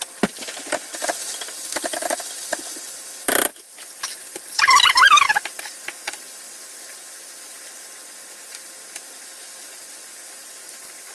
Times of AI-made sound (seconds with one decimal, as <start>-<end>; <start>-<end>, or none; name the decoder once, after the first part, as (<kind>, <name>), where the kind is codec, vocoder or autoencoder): 3.5-7.6 (vocoder, BigVGAN v2); 10.4-11.1